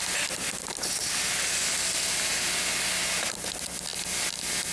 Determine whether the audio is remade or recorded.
recorded